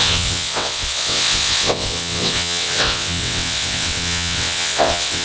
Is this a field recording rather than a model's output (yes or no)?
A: no